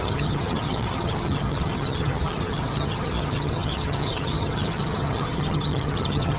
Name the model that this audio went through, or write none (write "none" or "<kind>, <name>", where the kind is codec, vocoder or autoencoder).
vocoder, HiFi-GAN